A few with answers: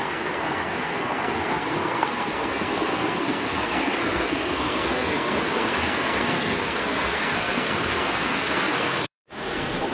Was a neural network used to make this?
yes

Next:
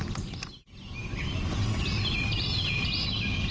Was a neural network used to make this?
no